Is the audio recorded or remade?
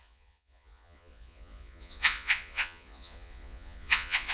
remade